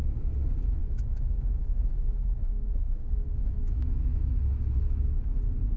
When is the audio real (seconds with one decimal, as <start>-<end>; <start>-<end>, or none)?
0.0-0.8; 4.3-5.8